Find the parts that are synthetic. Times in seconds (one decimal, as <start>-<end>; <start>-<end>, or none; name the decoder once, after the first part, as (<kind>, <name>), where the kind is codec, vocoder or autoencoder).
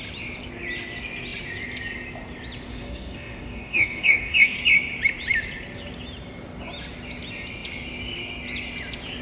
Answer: 2.7-4.6 (codec, DAC)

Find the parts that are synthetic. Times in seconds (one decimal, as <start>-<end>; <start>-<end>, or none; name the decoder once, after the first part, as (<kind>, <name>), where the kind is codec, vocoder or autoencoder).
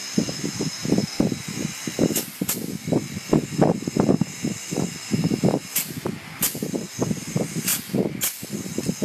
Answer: none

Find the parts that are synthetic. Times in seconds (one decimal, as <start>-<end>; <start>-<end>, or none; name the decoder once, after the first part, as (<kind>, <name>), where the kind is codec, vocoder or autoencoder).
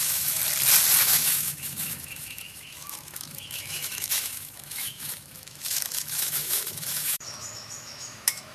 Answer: 0.0-0.4 (autoencoder, DAC-VAE); 1.0-8.5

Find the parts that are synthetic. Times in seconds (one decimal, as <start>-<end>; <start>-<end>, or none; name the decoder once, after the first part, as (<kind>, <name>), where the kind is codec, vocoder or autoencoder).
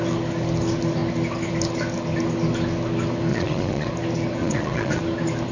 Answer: 3.3-3.9 (vocoder, Vocos); 4.4-5.0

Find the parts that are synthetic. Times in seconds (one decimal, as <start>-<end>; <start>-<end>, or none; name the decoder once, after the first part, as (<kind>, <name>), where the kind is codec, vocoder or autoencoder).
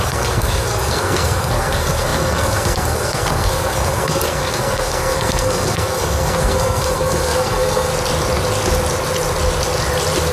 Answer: 0.0-7.9 (codec, SNAC)